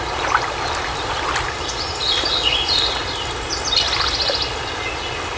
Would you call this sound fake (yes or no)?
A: no